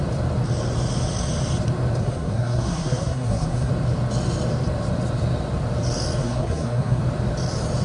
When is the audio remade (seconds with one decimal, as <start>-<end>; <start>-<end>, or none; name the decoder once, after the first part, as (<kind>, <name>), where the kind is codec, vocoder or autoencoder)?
2.0-3.7 (codec, SNAC); 6.2-7.0